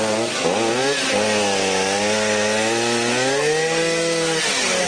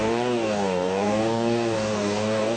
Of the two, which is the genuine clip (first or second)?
first